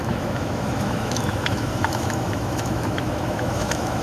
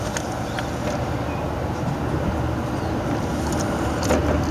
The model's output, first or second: first